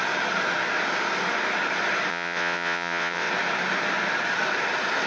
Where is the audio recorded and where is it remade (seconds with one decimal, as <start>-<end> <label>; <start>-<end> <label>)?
0.0-2.1 recorded; 2.1-3.3 remade; 3.3-5.1 recorded